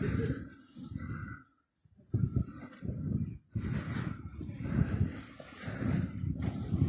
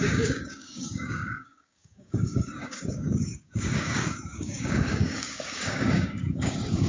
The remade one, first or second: second